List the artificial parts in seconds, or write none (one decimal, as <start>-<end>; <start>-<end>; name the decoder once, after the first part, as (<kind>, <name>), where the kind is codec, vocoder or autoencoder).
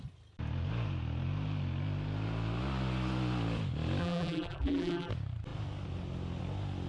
4.0-5.1 (vocoder, BigVGAN v2)